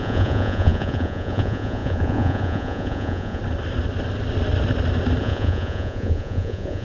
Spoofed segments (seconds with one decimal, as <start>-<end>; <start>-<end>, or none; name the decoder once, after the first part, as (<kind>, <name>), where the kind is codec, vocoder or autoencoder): 0.0-3.4 (vocoder, Vocos); 5.2-6.8